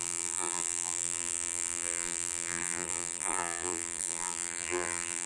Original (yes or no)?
no